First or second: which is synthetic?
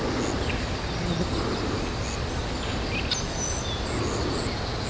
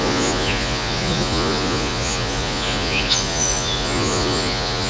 second